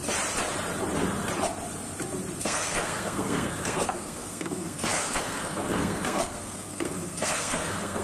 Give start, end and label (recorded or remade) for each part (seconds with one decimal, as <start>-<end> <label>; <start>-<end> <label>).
0.0-2.4 recorded; 2.4-8.0 remade